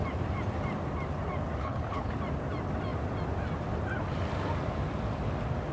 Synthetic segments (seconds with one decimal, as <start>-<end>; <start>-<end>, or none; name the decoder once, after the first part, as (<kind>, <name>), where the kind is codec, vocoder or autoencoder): 1.6-2.1 (codec, HILCodec)